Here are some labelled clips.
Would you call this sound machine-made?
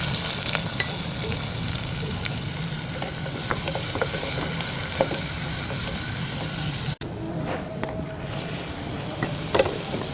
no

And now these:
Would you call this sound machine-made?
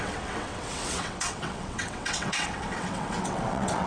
yes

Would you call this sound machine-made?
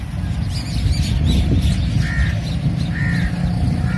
no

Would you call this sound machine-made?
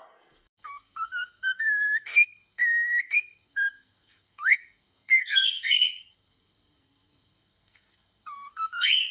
yes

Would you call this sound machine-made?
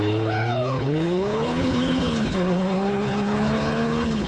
yes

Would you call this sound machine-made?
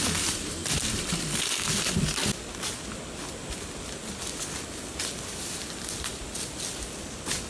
no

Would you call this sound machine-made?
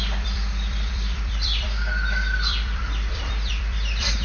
yes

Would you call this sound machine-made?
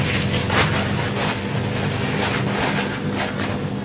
no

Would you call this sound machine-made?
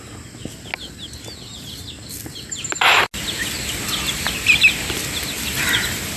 no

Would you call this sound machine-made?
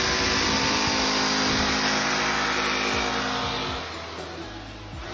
no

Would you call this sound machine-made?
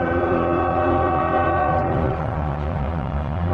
yes